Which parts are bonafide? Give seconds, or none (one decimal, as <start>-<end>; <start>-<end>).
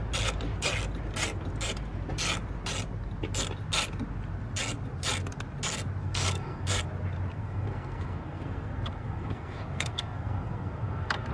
0.0-6.0; 6.8-7.3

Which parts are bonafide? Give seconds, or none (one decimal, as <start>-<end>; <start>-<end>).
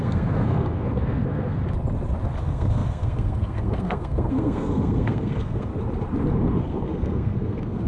1.6-2.4; 5.7-6.4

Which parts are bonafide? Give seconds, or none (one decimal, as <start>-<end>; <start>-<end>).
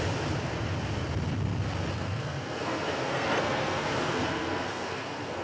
0.0-1.9